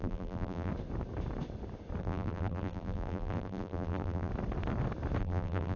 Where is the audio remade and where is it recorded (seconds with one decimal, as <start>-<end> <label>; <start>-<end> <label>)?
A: 0.0-0.7 remade; 0.7-2.0 recorded; 2.0-4.3 remade; 4.3-5.2 recorded; 5.2-5.8 remade